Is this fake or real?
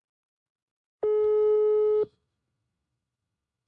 fake